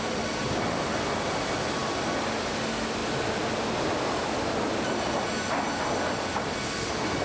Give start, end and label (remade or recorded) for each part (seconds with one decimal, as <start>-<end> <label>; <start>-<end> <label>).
0.0-0.4 recorded; 0.4-1.4 remade; 1.4-7.2 recorded